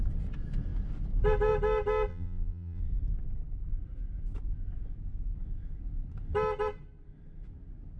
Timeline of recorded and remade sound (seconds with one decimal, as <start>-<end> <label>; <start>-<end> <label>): 0.0-2.1 recorded; 2.1-2.8 remade; 2.8-8.0 recorded